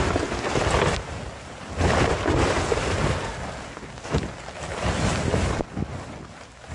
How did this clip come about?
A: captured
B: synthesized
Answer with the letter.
A